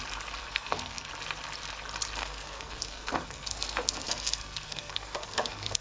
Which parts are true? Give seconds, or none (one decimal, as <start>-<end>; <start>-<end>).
0.0-0.4; 1.1-2.2